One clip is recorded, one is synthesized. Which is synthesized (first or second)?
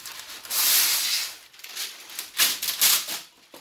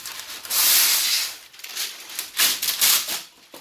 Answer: second